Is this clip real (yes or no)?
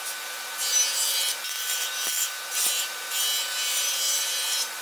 no